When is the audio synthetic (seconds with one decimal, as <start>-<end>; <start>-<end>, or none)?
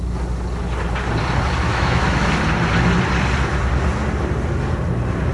1.7-2.3